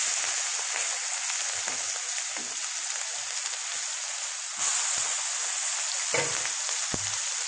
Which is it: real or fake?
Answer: real